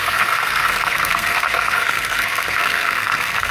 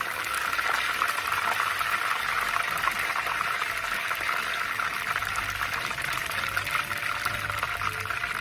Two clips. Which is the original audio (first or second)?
second